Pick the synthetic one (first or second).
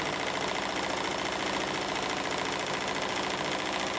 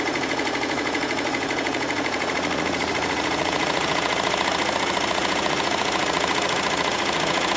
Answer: second